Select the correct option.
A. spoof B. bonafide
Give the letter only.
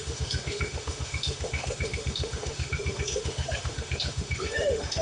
A